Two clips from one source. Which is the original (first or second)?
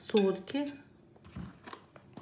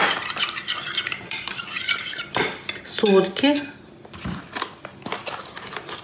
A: first